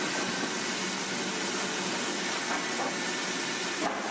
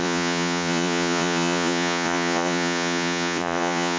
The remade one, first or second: second